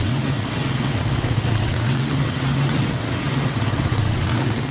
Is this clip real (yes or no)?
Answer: no